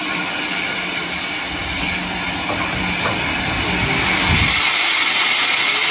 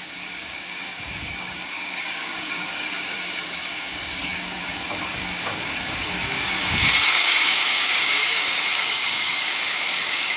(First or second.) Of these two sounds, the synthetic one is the second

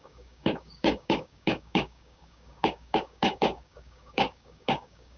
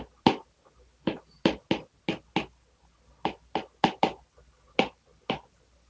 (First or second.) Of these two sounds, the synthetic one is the first